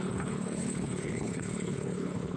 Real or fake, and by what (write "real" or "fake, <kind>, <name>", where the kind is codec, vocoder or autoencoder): fake, codec, HILCodec